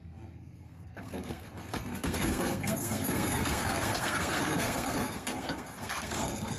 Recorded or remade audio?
remade